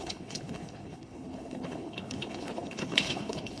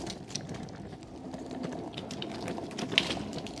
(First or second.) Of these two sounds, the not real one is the first